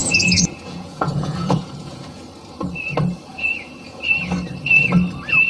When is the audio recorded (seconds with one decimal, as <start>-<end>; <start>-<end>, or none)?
2.2-3.3; 4.0-5.5